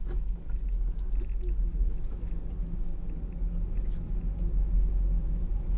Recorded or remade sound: recorded